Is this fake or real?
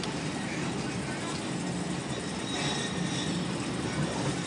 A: real